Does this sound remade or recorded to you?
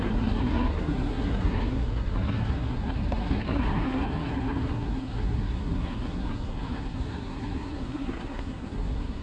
remade